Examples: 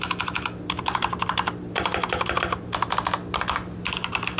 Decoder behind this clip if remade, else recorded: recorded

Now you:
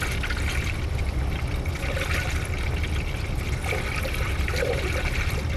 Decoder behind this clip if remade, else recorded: recorded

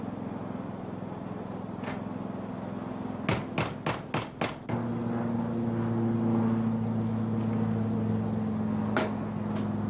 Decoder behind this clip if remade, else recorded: recorded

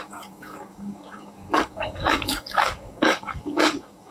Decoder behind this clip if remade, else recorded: remade, codec, DAC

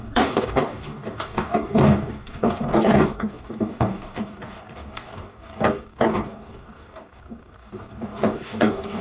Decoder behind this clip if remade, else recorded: remade, codec, DAC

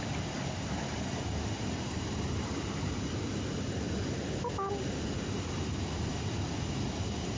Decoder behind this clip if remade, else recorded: recorded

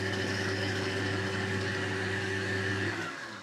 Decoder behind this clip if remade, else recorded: remade, codec, DAC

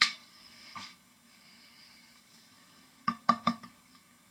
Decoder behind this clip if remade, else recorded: remade, codec, DAC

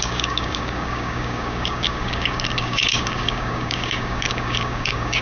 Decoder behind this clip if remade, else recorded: remade, codec, DAC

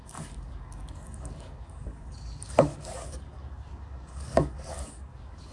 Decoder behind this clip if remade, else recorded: remade, codec, DAC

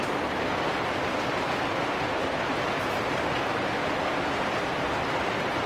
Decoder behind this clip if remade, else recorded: recorded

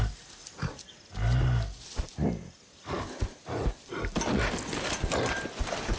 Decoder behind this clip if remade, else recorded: recorded